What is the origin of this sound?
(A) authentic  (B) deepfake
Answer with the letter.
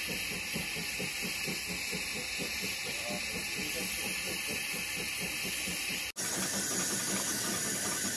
A